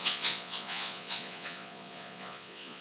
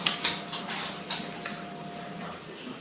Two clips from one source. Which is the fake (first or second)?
first